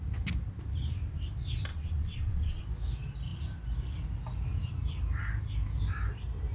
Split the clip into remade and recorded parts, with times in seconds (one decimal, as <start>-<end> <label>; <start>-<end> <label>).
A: 0.0-1.7 recorded; 1.7-2.6 remade; 2.6-6.5 recorded